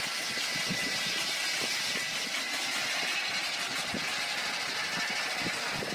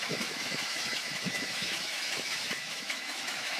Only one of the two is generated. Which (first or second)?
second